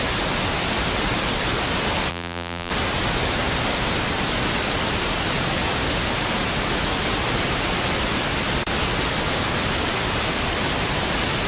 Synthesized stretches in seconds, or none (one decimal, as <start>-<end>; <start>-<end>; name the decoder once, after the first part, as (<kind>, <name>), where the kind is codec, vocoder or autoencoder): 2.1-2.7 (vocoder, BigVGAN v2)